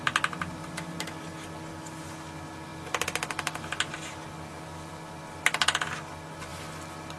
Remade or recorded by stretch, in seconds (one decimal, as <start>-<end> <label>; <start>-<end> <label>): 0.0-7.2 recorded